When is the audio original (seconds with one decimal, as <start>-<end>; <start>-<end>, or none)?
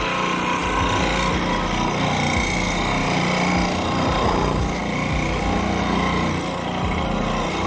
0.0-7.7